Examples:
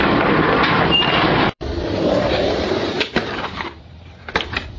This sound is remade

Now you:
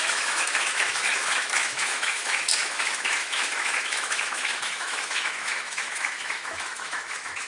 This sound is remade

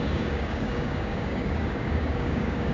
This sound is remade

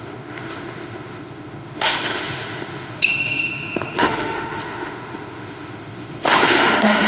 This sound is remade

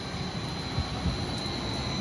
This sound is recorded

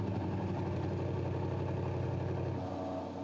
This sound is recorded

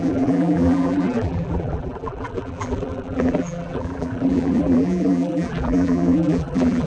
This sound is remade